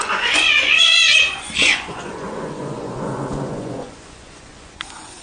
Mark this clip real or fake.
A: fake